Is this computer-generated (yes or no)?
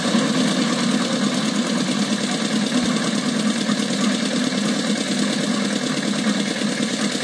no